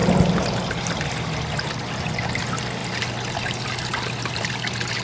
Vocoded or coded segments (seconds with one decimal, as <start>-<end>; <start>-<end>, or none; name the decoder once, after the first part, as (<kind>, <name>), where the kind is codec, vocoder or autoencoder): none